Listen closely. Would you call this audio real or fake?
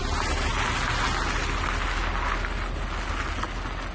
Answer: real